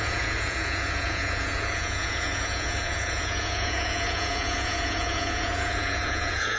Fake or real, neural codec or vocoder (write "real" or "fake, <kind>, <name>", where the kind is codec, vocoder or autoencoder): fake, vocoder, Vocos